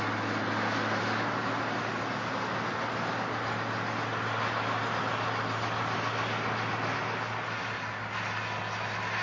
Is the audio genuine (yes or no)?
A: yes